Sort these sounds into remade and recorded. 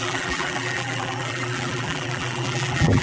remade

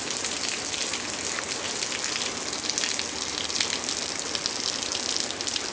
recorded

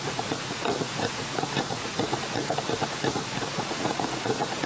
remade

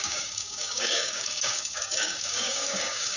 remade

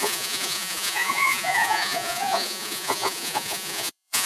remade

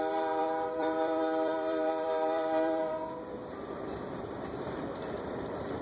remade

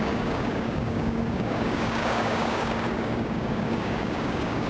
remade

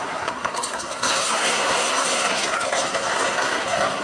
remade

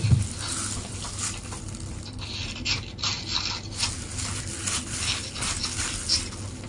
recorded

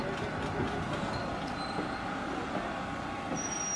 recorded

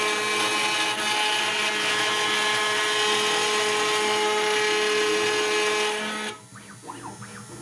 recorded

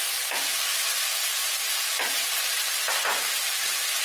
remade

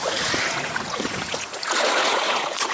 remade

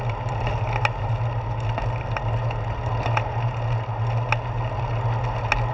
recorded